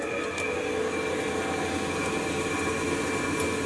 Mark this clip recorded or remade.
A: recorded